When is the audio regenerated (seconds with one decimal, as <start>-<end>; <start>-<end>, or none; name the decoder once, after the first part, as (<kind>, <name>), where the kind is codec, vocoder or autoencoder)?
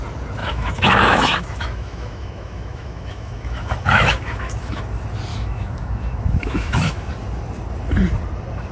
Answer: 0.4-4.8 (autoencoder, DAC-VAE); 5.3-7.1